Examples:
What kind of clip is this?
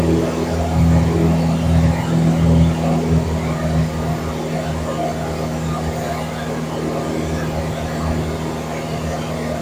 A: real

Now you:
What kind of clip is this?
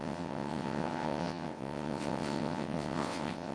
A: fake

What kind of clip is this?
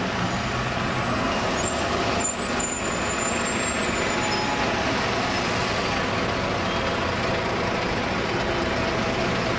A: real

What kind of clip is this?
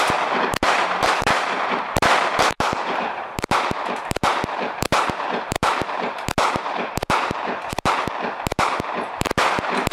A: fake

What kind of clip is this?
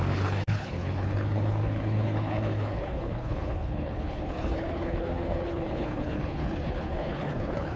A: fake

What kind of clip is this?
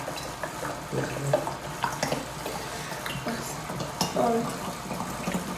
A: real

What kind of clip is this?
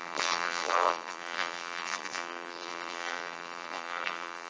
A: fake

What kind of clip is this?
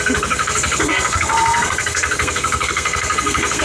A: fake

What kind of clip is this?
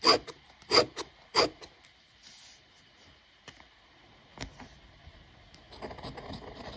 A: real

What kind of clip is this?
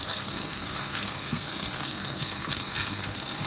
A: fake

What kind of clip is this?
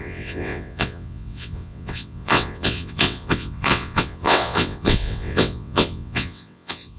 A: fake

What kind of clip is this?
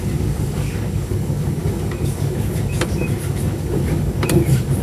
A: fake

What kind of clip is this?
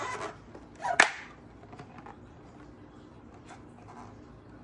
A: real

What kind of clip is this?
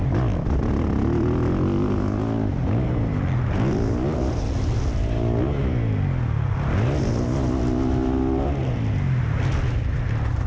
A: real